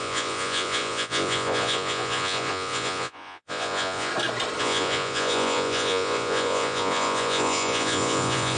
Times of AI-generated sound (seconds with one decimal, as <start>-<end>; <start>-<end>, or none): 0.0-4.1; 4.6-8.6